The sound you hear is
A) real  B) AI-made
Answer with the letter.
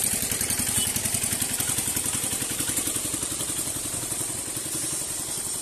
B